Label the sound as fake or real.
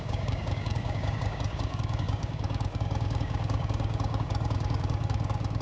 fake